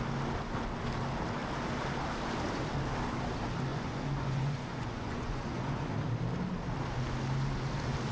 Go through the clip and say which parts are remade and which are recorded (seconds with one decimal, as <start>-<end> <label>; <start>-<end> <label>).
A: 0.0-3.7 recorded; 3.7-5.9 remade; 5.9-8.1 recorded